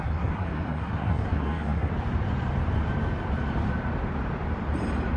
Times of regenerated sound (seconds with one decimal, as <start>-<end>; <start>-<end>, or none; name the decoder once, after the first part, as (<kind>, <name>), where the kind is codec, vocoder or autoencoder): 0.0-1.9 (codec, SNAC)